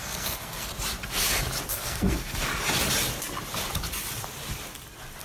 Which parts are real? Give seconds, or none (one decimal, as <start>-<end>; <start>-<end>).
0.7-1.7; 2.5-5.2